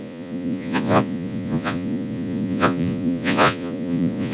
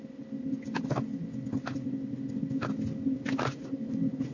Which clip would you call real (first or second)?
second